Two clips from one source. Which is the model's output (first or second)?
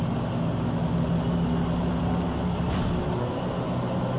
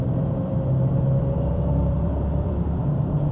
second